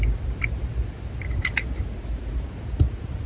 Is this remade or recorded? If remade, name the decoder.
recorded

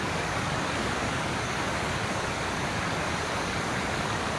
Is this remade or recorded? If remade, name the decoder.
remade, codec, DAC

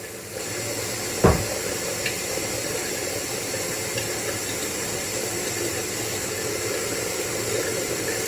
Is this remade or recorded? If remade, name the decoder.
recorded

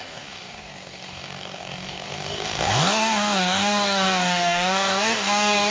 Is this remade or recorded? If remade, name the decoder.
remade, codec, DAC